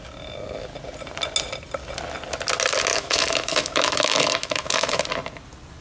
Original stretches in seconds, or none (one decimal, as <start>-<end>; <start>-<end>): 0.0-2.9; 5.0-5.8